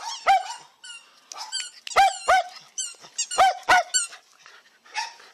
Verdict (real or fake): real